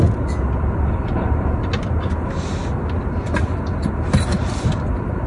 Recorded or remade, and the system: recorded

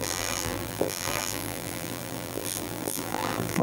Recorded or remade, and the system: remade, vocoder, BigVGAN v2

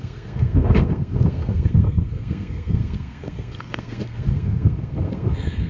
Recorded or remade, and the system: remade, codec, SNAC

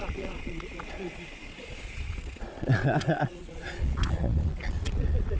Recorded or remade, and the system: remade, vocoder, Vocos